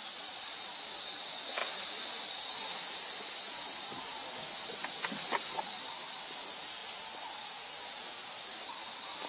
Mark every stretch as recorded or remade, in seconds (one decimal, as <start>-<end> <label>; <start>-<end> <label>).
0.0-9.3 recorded

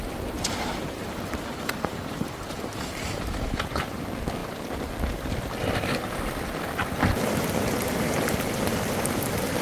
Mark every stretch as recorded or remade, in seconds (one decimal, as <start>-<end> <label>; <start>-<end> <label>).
0.0-9.6 recorded

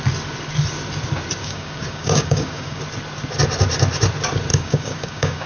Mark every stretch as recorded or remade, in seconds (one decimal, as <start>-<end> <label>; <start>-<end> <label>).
0.0-1.4 recorded; 1.4-2.8 remade; 2.8-4.5 recorded; 4.5-5.5 remade

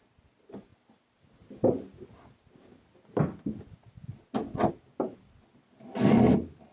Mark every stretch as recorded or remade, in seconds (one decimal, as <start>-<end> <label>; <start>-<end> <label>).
0.0-6.7 recorded

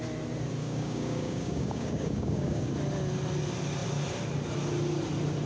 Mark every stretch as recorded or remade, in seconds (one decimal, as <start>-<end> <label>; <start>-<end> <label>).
0.0-0.6 recorded; 0.6-2.7 remade; 2.7-5.5 recorded